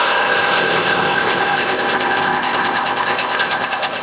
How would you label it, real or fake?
fake